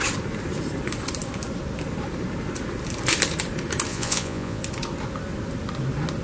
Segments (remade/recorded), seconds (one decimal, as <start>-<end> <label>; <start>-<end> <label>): 0.0-3.9 recorded; 3.9-4.6 remade; 4.6-6.2 recorded